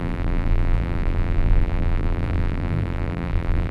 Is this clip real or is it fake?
fake